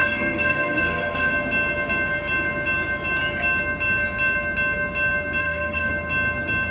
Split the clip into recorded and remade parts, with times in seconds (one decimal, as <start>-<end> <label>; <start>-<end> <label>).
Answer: 0.0-1.3 remade; 1.3-5.4 recorded; 5.4-5.9 remade; 5.9-6.7 recorded